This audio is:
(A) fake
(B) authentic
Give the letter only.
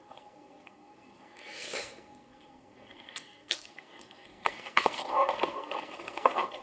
A